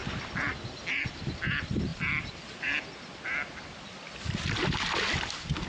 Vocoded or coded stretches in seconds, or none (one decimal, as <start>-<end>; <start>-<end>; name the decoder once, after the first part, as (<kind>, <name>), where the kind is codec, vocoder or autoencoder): none